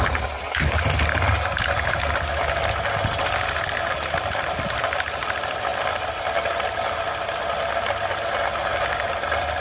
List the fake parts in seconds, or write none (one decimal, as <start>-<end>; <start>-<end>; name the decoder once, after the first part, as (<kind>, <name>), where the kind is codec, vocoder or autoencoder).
none